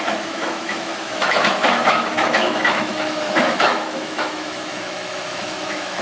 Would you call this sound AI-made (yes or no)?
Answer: yes